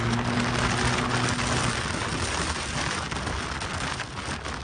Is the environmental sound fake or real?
real